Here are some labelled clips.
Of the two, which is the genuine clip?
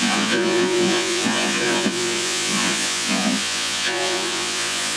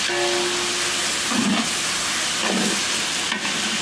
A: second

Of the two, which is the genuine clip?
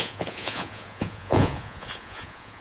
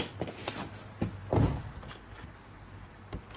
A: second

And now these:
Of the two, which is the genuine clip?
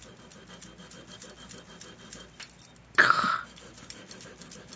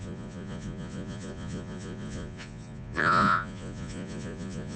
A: first